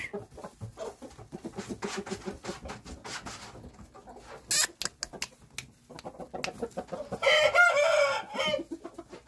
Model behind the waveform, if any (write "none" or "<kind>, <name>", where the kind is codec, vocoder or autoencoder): none